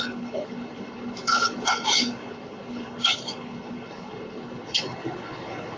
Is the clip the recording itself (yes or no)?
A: no